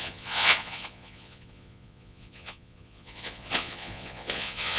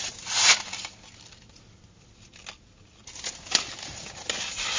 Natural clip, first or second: second